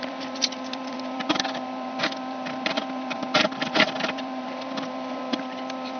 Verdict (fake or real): fake